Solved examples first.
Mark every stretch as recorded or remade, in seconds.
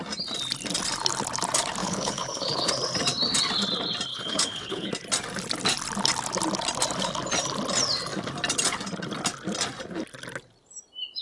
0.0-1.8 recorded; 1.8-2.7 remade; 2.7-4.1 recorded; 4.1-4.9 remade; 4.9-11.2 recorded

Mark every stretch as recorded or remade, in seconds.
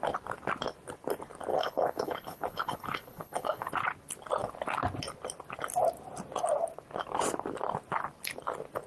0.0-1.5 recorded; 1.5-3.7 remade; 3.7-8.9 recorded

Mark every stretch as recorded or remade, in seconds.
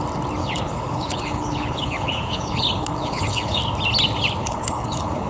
0.0-0.4 recorded; 0.4-3.6 remade; 3.6-4.4 recorded; 4.4-5.3 remade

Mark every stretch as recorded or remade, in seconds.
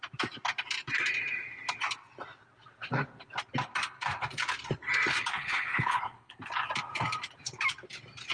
0.0-5.3 recorded; 5.3-6.4 remade; 6.4-8.3 recorded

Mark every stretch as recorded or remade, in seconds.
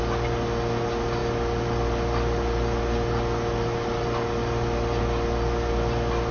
0.0-6.3 recorded